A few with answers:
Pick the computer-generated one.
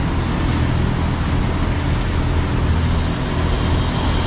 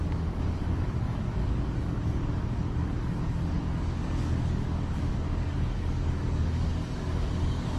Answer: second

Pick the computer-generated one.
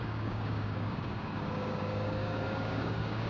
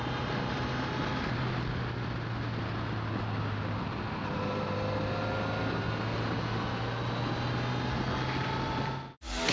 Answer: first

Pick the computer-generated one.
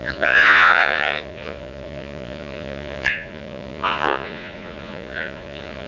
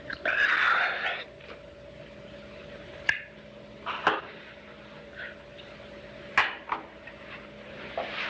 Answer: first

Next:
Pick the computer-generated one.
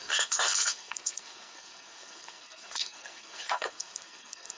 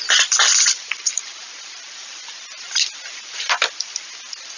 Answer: first